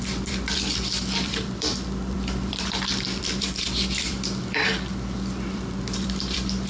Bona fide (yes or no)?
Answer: no